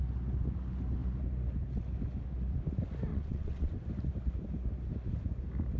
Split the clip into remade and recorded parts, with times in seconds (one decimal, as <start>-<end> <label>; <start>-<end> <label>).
0.0-3.1 recorded; 3.1-3.7 remade; 3.7-5.8 recorded